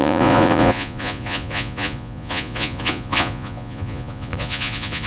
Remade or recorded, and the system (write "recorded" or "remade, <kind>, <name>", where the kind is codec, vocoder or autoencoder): remade, vocoder, Vocos